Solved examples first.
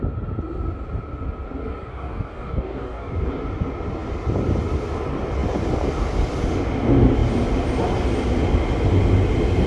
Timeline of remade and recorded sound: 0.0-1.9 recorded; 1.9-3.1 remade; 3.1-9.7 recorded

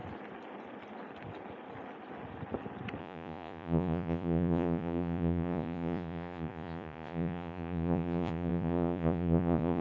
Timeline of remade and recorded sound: 0.0-3.0 recorded; 3.0-9.8 remade

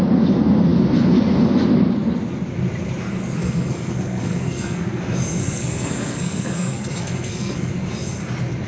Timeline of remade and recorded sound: 0.0-3.4 recorded; 3.4-5.0 remade; 5.0-5.4 recorded; 5.4-7.7 remade; 7.7-8.7 recorded

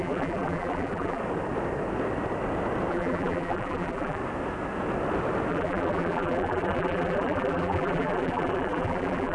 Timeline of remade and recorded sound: 0.0-1.2 remade; 1.2-2.9 recorded; 2.9-4.2 remade; 4.2-5.5 recorded; 5.5-9.3 remade